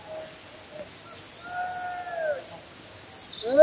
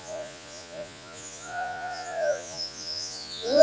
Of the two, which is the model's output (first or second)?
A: second